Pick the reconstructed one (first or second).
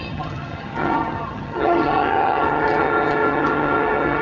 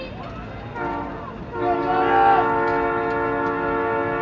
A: first